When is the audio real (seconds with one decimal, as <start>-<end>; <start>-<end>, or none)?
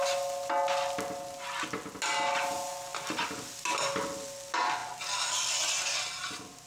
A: 0.0-6.7